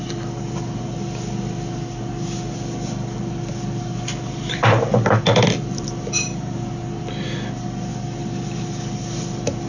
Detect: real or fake real